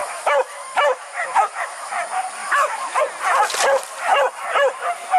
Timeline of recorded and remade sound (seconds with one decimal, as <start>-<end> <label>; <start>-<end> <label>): 0.0-1.9 remade; 1.9-2.4 recorded; 2.4-3.0 remade; 3.0-5.2 recorded

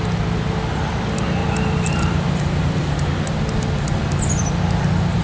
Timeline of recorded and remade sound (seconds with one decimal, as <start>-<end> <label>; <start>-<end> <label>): 0.0-1.4 recorded; 1.4-4.5 remade; 4.5-5.2 recorded

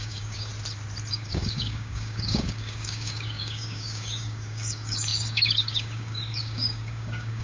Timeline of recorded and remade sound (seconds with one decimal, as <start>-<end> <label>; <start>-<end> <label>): 0.0-0.5 remade; 0.5-1.1 recorded; 1.1-7.4 remade

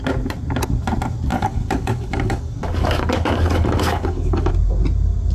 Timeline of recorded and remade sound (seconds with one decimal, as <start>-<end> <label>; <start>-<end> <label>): 0.0-1.3 recorded; 1.3-4.5 remade; 4.5-5.3 recorded